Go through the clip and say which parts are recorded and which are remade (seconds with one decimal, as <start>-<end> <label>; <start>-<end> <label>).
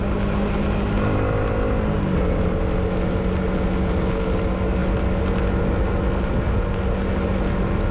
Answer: 0.0-7.9 recorded